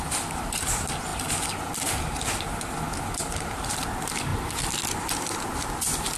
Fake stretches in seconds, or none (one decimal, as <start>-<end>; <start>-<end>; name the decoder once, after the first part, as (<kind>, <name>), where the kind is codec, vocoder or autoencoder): none